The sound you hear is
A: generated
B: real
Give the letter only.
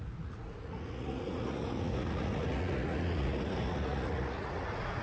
A